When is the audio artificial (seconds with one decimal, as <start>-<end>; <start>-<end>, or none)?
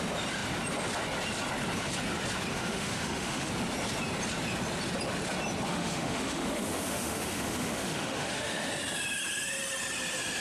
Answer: 2.5-3.5; 5.7-8.7